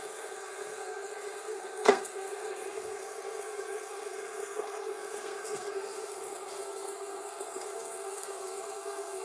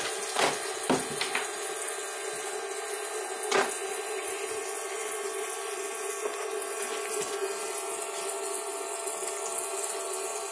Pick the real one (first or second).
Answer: second